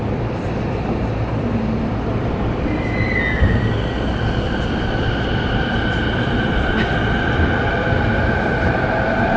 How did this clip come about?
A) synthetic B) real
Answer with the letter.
A